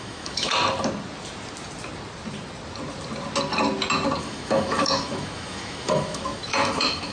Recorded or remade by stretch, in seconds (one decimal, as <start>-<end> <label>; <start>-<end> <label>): 0.0-0.5 remade; 0.5-4.2 recorded; 4.2-7.1 remade